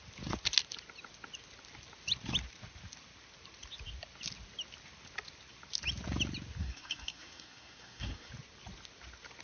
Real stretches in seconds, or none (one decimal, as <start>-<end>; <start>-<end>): 0.0-6.6; 8.3-9.4